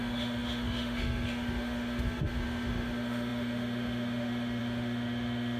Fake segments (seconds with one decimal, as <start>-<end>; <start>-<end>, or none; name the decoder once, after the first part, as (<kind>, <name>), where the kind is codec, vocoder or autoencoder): 0.0-5.6 (autoencoder, DAC-VAE)